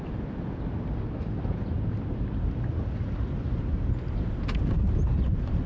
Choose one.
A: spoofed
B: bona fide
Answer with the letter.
B